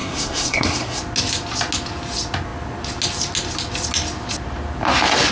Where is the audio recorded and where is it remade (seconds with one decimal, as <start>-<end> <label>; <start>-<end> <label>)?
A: 0.0-1.0 remade; 1.0-5.3 recorded